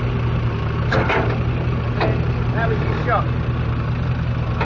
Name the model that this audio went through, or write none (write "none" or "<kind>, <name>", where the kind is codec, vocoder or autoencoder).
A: none